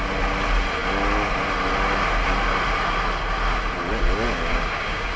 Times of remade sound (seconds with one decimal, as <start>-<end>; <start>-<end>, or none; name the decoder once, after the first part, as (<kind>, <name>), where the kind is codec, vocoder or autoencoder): 4.5-5.2 (codec, DAC)